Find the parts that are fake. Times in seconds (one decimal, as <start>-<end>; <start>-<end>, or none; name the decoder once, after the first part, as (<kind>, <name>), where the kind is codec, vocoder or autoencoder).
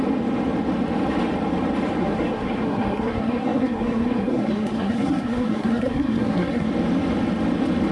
2.0-6.7 (codec, SNAC)